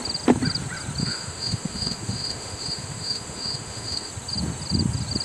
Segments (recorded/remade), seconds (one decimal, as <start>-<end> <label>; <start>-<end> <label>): 0.0-1.0 recorded; 1.0-4.1 remade; 4.1-5.2 recorded